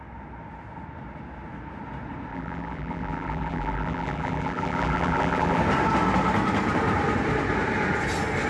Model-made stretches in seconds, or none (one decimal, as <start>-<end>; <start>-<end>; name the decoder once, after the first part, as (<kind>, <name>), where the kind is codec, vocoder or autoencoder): 2.3-5.6 (vocoder, BigVGAN v2)